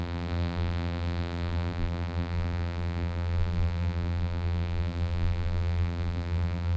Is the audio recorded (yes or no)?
no